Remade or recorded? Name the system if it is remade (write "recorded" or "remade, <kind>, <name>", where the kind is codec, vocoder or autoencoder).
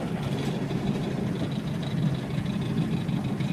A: recorded